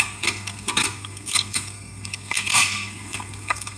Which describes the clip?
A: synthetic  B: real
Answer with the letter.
A